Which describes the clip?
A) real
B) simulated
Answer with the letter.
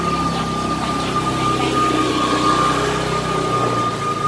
A